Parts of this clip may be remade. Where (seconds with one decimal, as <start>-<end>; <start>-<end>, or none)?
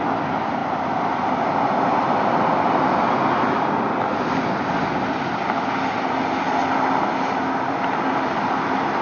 none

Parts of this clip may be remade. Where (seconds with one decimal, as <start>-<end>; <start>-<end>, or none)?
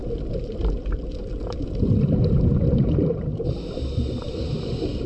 0.0-5.1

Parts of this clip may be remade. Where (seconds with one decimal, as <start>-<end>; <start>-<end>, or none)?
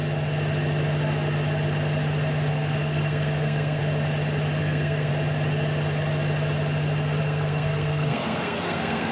2.5-3.8; 4.6-5.1; 7.2-9.1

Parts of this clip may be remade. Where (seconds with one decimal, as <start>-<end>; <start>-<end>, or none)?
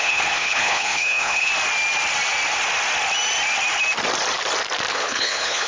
0.0-1.5; 4.9-5.7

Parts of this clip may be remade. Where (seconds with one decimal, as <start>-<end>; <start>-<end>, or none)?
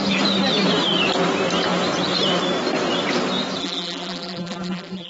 3.6-5.1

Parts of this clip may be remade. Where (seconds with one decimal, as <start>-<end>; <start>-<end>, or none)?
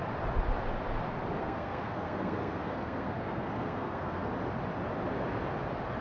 1.4-4.3